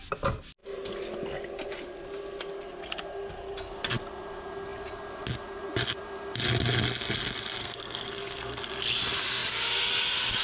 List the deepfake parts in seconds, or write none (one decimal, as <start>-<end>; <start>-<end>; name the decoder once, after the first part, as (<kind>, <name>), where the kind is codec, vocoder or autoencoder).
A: 7.6-8.6 (codec, SNAC)